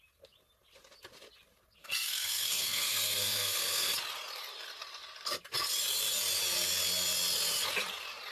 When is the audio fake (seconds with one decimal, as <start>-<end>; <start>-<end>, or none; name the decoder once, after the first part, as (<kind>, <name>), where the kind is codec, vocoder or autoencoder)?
1.8-3.9 (codec, SNAC)